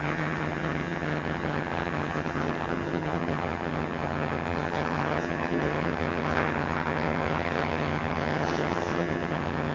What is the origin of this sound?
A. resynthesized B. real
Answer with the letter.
A